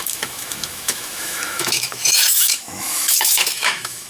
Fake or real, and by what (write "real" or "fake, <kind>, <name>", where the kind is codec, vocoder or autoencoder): fake, autoencoder, DAC-VAE